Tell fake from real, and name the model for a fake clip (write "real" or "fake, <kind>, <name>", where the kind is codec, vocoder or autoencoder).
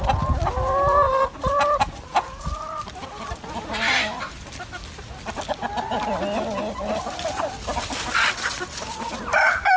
real